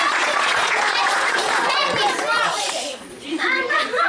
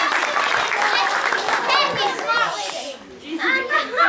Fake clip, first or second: first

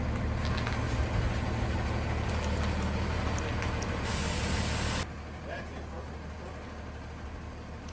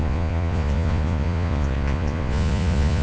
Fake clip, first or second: second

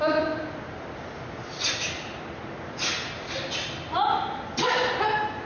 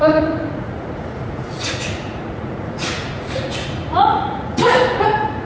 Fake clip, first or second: second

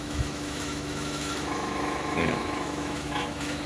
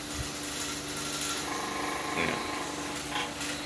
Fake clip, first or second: first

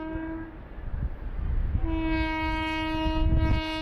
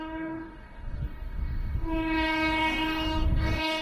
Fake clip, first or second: second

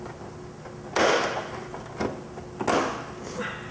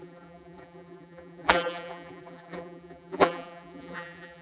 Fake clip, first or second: second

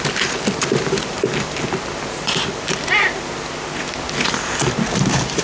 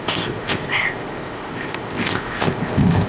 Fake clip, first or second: second